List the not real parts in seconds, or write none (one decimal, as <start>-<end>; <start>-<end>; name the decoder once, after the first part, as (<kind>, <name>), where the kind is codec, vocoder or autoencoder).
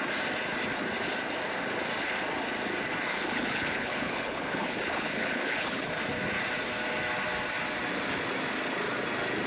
3.1-5.9 (codec, HILCodec)